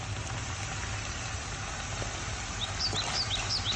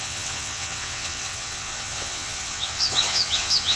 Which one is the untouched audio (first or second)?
first